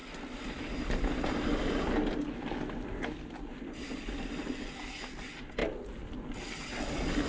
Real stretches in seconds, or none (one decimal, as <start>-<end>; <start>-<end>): 0.0-7.3